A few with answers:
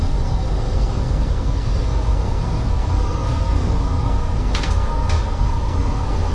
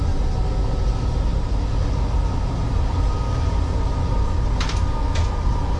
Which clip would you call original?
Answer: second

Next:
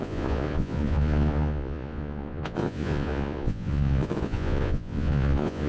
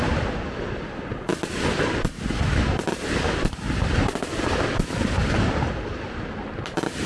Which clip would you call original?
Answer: second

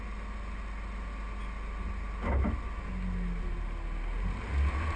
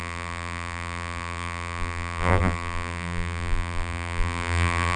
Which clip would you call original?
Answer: first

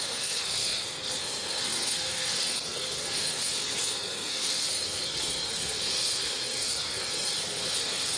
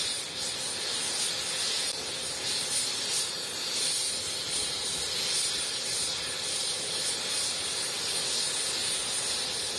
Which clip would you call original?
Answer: second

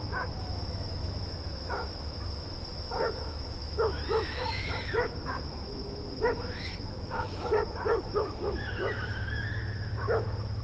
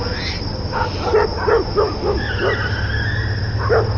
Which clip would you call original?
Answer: second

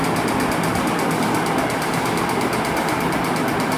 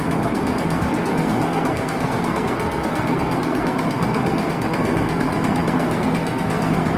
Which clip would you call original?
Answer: first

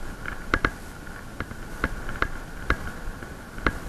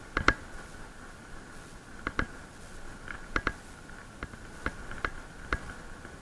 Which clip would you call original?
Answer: second